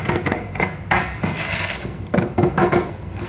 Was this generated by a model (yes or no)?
yes